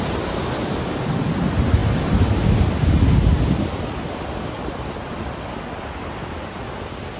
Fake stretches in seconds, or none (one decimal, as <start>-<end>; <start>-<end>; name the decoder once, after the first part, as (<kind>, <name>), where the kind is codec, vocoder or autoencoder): none